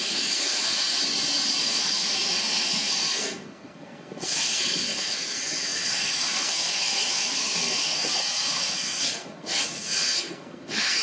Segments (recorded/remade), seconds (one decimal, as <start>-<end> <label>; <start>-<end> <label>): 0.0-1.0 remade; 1.0-1.6 recorded; 1.6-11.0 remade